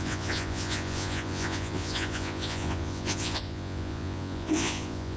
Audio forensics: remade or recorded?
remade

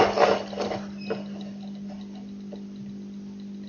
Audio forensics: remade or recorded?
recorded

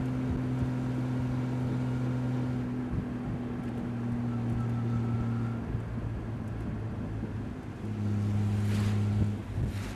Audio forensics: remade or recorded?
recorded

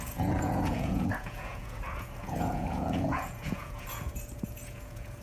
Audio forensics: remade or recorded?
remade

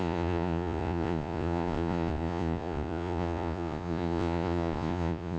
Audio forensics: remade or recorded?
remade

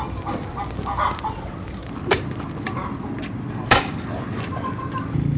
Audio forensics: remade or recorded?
recorded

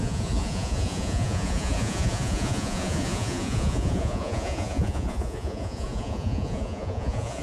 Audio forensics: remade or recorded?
remade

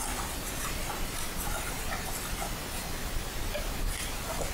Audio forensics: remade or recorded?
recorded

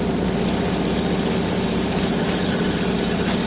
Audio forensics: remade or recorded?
recorded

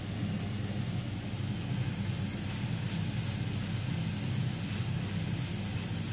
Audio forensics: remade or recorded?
recorded